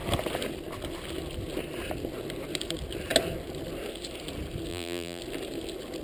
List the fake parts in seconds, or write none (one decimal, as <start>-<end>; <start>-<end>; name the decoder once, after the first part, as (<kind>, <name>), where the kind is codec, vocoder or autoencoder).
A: 4.7-5.2 (vocoder, BigVGAN v2)